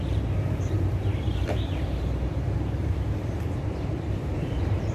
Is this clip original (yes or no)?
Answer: no